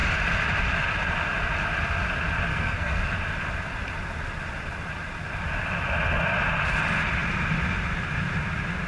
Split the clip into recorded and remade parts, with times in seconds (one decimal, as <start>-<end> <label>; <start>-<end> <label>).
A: 0.0-2.5 recorded; 2.5-3.0 remade; 3.0-8.9 recorded